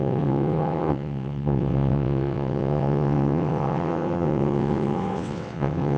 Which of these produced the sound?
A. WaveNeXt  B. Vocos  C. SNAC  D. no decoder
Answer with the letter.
A